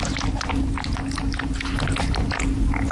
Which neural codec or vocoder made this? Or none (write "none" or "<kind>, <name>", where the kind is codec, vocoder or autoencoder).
none